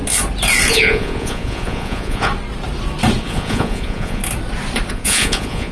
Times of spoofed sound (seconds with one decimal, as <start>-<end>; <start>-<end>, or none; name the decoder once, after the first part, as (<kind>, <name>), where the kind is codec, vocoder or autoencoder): 0.7-2.3 (vocoder, Vocos); 3.2-4.2; 4.9-5.7